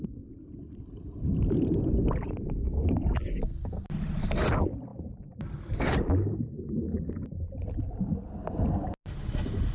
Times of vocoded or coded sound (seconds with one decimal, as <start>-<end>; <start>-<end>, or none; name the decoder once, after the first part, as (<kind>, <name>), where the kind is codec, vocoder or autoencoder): none